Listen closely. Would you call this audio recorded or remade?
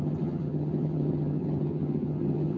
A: remade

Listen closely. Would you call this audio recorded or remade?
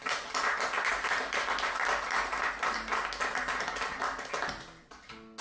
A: recorded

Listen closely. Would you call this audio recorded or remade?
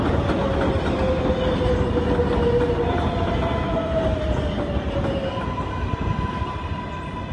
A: recorded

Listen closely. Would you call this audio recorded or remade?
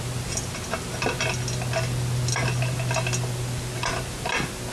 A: recorded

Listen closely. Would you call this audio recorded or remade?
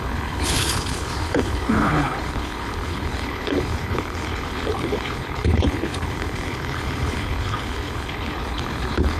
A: remade